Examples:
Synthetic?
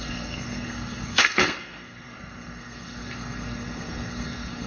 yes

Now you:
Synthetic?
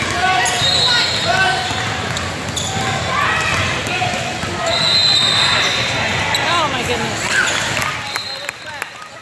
no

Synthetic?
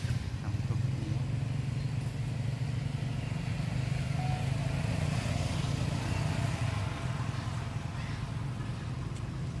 no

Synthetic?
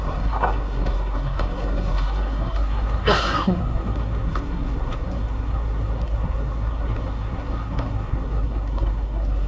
yes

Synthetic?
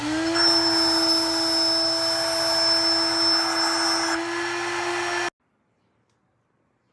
no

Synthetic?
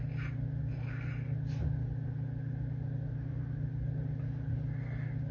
no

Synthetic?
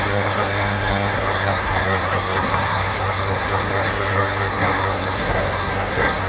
yes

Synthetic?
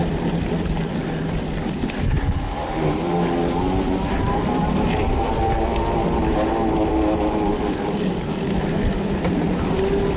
no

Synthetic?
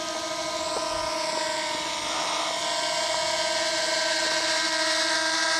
no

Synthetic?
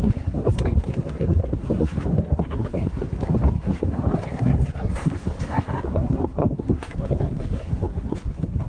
yes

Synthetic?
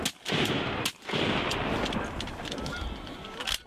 no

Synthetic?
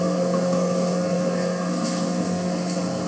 yes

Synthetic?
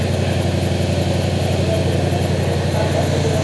no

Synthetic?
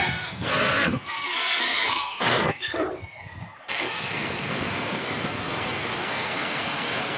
yes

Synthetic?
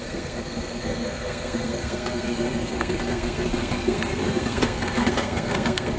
yes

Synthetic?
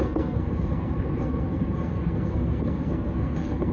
yes